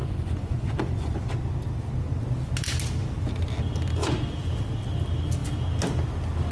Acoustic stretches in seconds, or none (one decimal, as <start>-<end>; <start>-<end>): 1.3-6.5